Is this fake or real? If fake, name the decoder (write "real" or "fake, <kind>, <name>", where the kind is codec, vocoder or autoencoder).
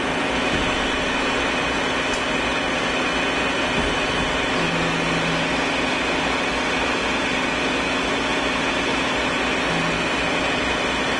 real